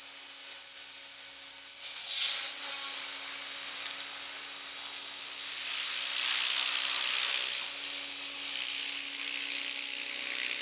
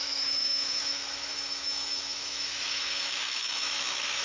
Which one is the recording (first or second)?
first